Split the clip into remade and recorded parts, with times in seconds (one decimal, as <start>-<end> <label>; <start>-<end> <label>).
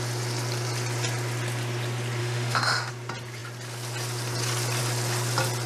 0.0-2.2 recorded; 2.2-2.9 remade; 2.9-5.7 recorded